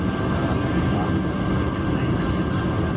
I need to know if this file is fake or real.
real